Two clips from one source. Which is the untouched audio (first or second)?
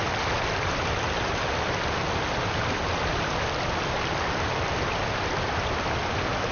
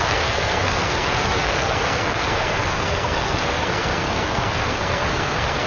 first